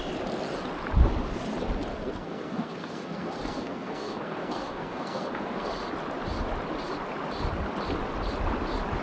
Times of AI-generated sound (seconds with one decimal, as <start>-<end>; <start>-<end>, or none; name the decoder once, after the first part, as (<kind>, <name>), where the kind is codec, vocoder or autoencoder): 1.9-5.7 (codec, SNAC)